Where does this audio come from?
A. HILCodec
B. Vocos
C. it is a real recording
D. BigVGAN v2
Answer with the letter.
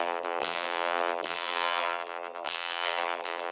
D